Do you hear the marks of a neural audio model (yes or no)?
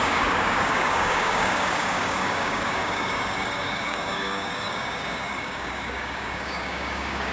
yes